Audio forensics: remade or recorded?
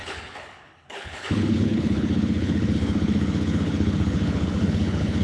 remade